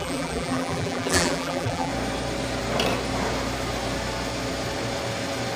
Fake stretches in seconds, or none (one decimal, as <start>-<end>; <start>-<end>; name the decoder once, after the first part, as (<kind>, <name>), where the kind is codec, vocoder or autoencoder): 0.0-1.9 (vocoder, BigVGAN v2)